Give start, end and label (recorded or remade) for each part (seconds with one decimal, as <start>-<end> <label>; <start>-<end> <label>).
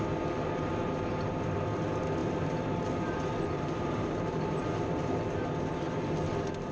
0.0-2.2 recorded; 2.2-6.2 remade; 6.2-6.7 recorded